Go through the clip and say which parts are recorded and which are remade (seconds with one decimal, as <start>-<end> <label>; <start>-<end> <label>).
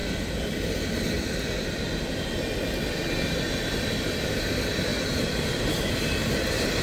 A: 0.0-3.7 recorded; 3.7-4.9 remade; 4.9-5.7 recorded; 5.7-6.8 remade